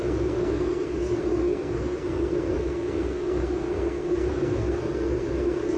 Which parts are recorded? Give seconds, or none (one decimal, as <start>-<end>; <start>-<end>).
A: none